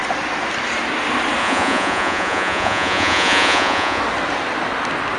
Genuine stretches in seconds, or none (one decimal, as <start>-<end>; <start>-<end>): 0.0-1.4; 4.0-5.2